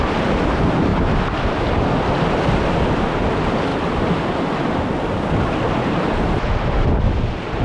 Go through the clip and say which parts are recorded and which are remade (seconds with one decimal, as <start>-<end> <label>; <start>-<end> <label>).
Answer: 0.0-7.6 recorded